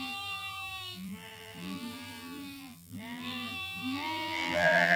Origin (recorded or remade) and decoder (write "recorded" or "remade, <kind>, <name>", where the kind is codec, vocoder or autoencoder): remade, vocoder, BigVGAN v2